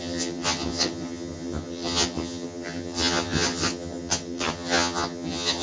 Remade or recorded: remade